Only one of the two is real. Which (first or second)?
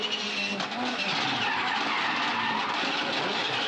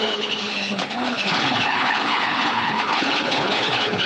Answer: first